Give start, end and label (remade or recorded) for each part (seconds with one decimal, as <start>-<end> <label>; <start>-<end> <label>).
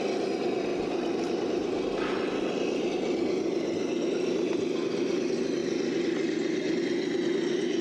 0.0-7.8 recorded